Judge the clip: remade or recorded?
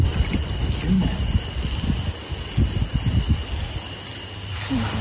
recorded